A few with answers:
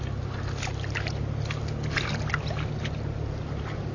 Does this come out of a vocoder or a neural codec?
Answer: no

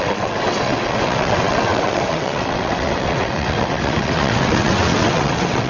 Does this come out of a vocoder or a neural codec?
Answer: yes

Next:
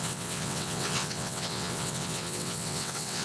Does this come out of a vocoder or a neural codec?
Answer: yes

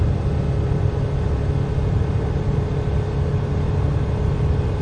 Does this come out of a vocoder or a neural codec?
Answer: no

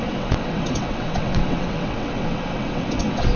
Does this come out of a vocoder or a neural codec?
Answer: yes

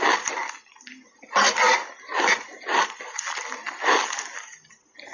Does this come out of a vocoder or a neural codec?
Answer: no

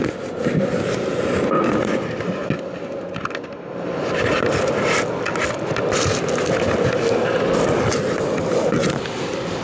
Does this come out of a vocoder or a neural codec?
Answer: no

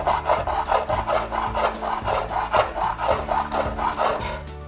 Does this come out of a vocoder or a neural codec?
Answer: no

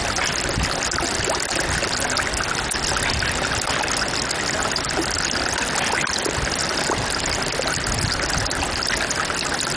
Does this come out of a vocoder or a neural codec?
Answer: no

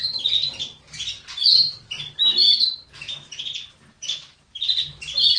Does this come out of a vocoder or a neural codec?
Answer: no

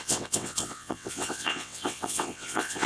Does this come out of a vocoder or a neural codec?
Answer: yes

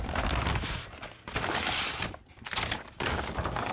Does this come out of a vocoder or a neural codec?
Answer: no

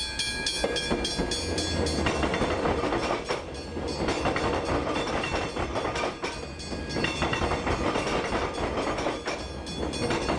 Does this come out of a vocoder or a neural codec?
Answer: no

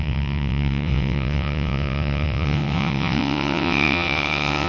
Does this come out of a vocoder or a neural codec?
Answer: yes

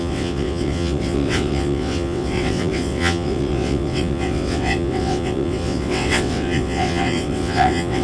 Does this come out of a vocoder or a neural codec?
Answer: yes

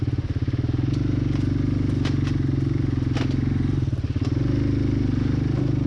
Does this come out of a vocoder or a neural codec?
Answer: no